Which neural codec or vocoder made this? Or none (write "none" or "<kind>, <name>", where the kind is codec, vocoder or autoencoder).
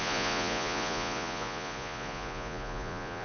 vocoder, Vocos